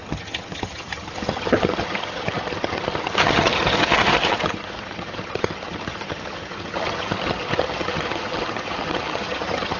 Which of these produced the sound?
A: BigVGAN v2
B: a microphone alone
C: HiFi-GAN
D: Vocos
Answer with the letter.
C